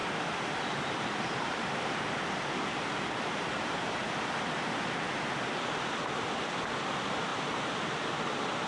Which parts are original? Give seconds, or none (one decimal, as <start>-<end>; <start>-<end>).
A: 0.0-3.0; 7.3-7.8